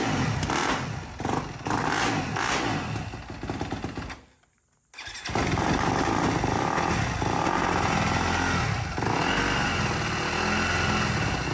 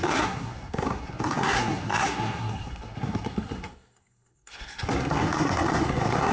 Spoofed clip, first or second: second